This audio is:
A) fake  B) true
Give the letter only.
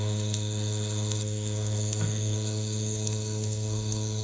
A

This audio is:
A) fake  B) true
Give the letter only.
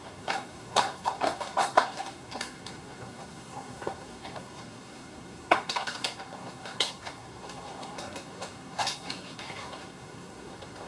A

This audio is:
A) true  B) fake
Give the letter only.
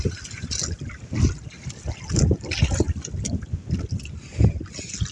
A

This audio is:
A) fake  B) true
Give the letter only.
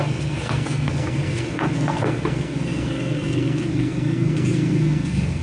A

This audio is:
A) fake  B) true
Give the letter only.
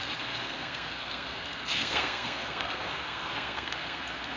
A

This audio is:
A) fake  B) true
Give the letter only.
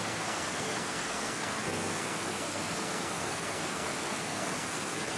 A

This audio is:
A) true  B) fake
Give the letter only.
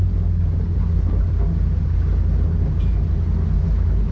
A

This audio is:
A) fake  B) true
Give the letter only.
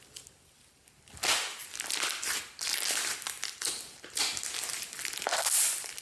B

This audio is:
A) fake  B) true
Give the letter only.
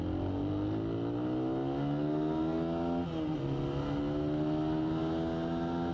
B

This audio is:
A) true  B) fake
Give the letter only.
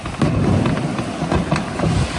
A